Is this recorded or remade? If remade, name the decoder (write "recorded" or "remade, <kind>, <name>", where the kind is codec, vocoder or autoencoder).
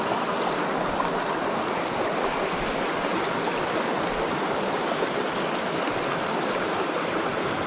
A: recorded